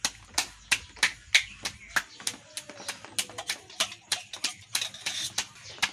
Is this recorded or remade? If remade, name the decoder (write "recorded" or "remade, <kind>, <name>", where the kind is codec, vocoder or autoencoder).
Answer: recorded